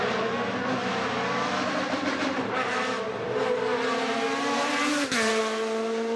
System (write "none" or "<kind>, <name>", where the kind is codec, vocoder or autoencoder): none